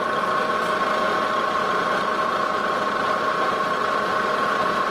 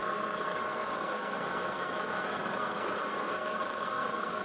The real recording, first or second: first